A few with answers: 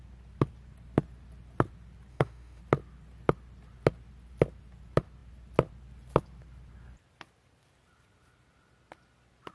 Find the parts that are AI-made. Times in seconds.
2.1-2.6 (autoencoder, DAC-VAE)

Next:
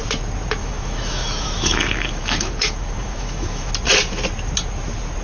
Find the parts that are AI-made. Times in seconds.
0.6-3.7 (autoencoder, DAC-VAE)